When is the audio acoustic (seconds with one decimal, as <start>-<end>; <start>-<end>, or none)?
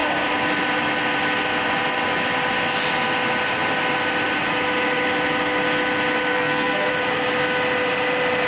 0.0-6.3; 6.9-8.5